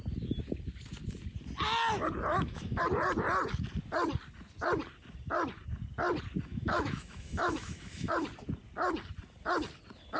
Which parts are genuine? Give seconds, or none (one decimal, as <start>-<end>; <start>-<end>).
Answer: 0.0-2.3; 2.8-6.5; 8.1-10.2